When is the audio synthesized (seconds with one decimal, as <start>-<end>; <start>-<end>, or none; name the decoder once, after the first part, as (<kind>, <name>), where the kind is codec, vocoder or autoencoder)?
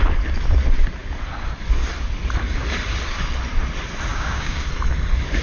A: 4.1-4.7 (codec, DAC)